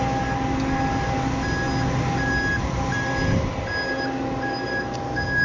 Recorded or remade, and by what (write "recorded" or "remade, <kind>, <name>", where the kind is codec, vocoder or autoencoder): recorded